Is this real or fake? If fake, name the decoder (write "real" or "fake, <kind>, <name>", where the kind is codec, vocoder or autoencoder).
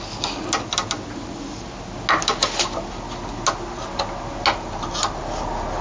real